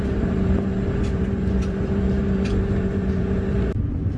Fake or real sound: fake